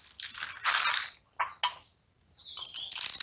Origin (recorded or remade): recorded